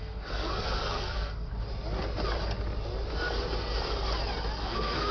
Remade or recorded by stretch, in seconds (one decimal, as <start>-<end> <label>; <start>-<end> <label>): 0.0-1.5 remade; 1.5-4.6 recorded; 4.6-5.1 remade